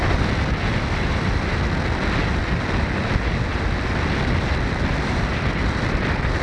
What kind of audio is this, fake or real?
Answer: real